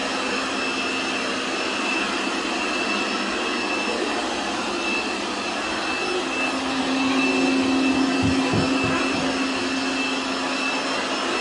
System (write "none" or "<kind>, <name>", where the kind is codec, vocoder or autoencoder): none